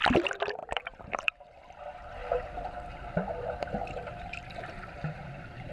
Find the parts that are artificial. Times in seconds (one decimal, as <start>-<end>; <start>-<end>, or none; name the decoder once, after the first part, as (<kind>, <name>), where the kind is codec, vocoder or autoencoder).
0.6-1.3 (vocoder, BigVGAN v2); 2.2-5.7